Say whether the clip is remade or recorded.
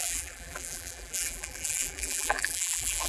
remade